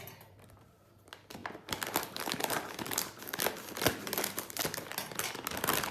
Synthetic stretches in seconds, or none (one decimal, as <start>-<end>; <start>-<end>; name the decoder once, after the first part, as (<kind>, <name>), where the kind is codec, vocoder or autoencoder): none

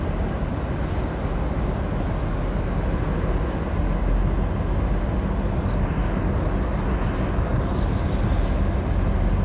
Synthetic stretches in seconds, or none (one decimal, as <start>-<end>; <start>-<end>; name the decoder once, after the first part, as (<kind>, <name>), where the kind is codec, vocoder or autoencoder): none

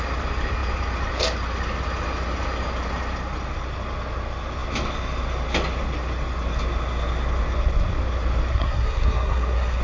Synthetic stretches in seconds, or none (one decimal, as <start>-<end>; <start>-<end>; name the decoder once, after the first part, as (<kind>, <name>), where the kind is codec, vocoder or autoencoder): 8.5-9.8 (codec, SNAC)

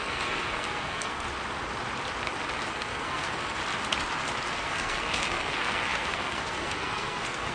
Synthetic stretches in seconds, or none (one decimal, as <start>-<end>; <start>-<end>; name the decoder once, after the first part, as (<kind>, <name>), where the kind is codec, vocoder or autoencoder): 0.0-1.3 (codec, SNAC); 2.7-3.6; 4.5-7.5

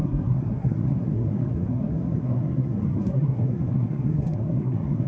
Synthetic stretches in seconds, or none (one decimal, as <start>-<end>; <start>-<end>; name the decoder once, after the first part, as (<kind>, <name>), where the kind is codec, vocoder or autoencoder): 0.0-5.1 (codec, SNAC)